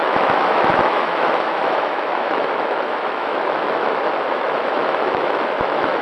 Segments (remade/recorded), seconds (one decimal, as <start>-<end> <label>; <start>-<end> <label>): 0.0-6.0 remade